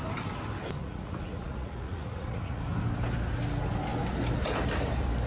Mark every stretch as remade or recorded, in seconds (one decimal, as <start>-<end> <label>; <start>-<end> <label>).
0.0-0.8 recorded; 0.8-2.6 remade; 2.6-5.3 recorded